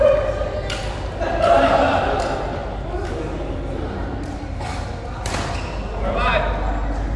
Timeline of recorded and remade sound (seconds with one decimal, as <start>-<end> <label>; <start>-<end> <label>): 0.0-7.2 recorded